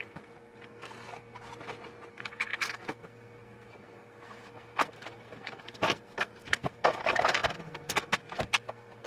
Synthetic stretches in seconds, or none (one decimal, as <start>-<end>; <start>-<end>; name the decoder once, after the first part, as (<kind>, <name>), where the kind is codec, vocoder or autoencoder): 0.0-1.5 (codec, SNAC); 2.1-9.1